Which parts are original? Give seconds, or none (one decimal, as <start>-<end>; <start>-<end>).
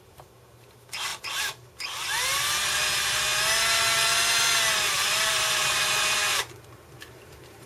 1.1-4.9; 6.2-7.0